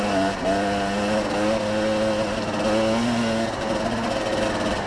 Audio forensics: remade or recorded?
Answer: recorded